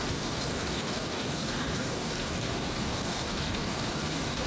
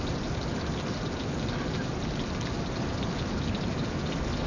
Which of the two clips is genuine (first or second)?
second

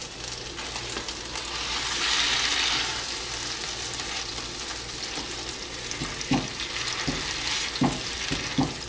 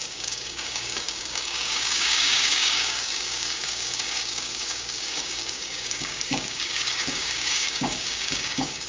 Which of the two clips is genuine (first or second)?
first